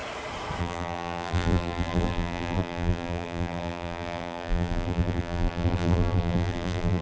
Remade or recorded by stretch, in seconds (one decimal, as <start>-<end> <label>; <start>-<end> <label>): 0.0-0.6 recorded; 0.6-7.0 remade